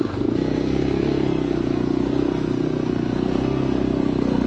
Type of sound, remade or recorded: remade